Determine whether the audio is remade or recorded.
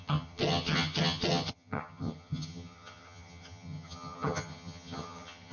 remade